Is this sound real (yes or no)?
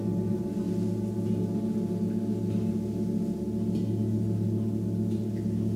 yes